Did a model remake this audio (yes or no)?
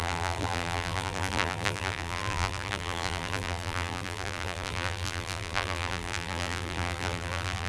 yes